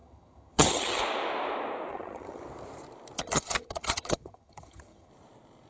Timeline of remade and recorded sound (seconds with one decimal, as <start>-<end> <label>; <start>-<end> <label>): 0.0-1.0 remade; 1.0-1.9 recorded; 1.9-2.4 remade; 2.4-3.2 recorded; 3.2-5.1 remade; 5.1-5.7 recorded